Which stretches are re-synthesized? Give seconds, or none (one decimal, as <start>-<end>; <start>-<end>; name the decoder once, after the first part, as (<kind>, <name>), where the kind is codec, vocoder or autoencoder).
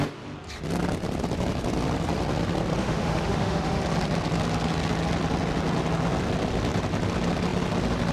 2.8-3.8 (autoencoder, DAC-VAE)